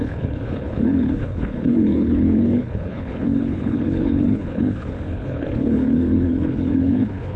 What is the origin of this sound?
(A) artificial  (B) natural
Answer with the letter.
A